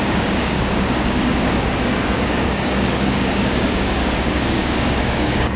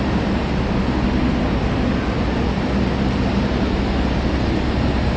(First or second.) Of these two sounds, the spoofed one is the first